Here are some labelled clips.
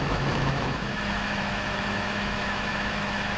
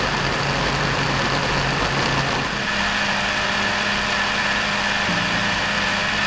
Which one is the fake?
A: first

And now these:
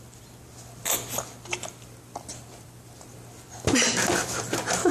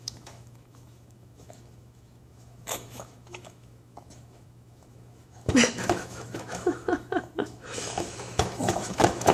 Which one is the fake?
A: second